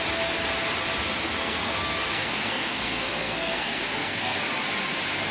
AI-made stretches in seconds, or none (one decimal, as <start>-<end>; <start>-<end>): 1.4-4.4